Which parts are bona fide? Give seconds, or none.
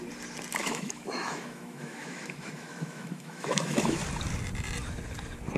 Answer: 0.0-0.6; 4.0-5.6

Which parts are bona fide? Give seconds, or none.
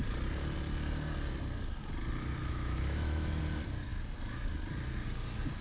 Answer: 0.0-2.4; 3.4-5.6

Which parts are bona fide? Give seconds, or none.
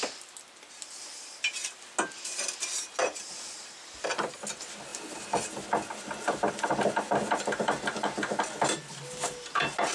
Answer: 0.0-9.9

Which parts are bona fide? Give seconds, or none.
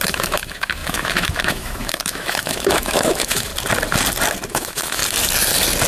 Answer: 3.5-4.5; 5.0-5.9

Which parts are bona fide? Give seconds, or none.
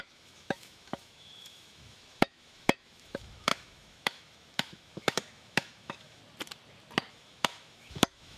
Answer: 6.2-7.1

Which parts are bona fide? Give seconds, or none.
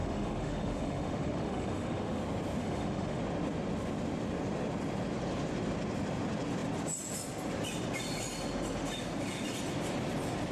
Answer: 2.2-2.6; 3.2-10.5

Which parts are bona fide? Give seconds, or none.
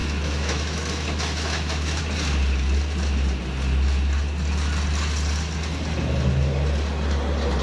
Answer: 2.0-7.6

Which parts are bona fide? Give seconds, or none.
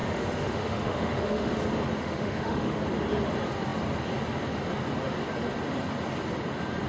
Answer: 1.6-2.0; 2.8-6.9